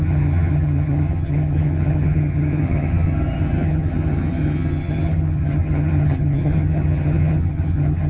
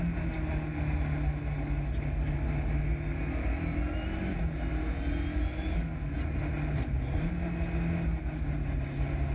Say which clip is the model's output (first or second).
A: first